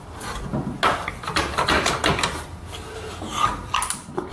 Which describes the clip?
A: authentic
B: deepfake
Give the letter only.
A